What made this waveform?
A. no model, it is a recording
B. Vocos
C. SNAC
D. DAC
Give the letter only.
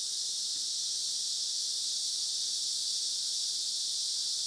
A